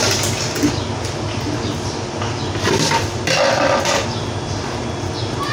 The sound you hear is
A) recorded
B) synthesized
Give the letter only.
A